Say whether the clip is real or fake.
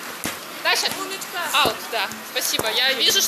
real